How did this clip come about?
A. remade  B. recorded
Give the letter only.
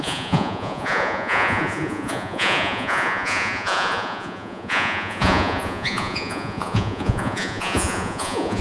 A